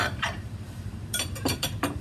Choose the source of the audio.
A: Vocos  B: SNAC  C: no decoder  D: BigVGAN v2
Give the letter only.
D